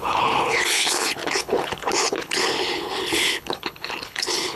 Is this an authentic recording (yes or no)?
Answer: no